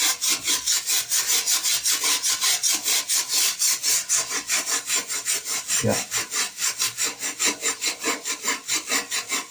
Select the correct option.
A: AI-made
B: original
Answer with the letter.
B